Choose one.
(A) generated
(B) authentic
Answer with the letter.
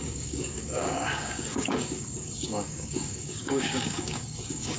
A